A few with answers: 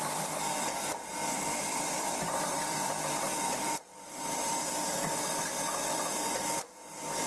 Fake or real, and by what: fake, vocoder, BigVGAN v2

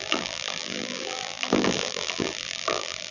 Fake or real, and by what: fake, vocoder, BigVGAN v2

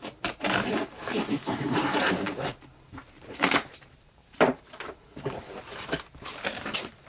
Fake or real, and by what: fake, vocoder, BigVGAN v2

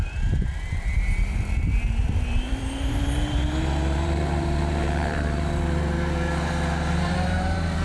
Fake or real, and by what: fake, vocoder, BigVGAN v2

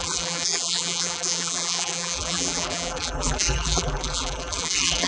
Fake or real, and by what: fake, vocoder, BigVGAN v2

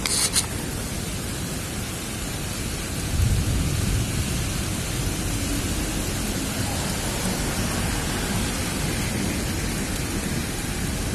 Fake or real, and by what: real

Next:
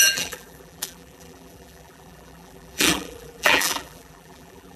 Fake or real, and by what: fake, vocoder, BigVGAN v2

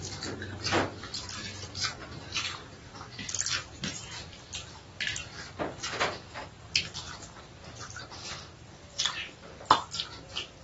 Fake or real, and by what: real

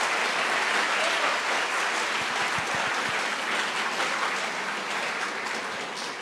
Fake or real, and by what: real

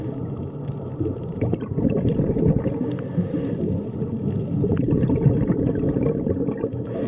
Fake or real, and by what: real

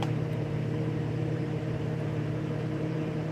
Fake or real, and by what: fake, vocoder, BigVGAN v2